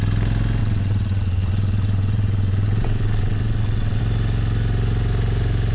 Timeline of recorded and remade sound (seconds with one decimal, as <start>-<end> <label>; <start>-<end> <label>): 0.0-0.6 recorded; 0.6-4.0 remade; 4.0-5.7 recorded